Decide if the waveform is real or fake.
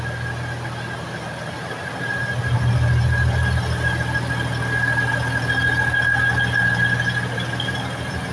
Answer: real